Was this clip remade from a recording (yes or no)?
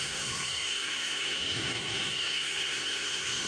yes